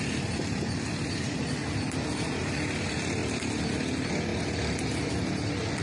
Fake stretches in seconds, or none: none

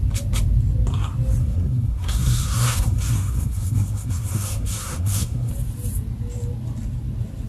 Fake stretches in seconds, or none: 1.4-5.5 (codec, SNAC)

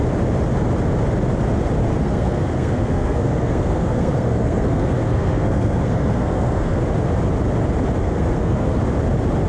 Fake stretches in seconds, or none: 1.9-6.8 (codec, SNAC); 8.0-8.8